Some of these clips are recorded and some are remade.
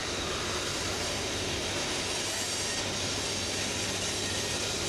recorded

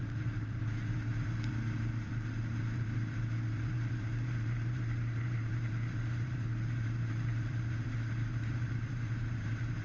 remade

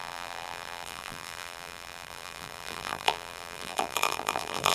remade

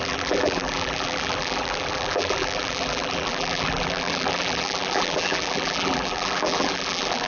remade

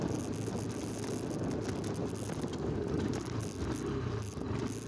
recorded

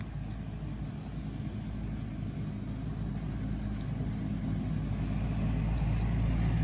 recorded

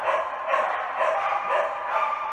recorded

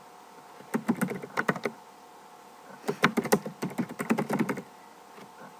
recorded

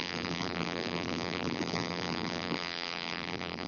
remade